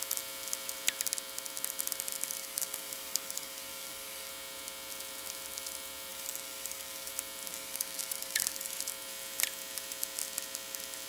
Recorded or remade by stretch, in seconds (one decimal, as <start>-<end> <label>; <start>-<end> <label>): 0.0-2.4 recorded; 2.4-4.3 remade; 4.3-6.1 recorded; 6.1-7.1 remade; 7.1-7.5 recorded; 7.5-8.8 remade; 8.8-11.1 recorded